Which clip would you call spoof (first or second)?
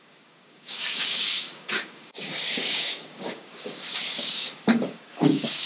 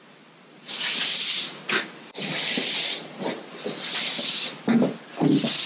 first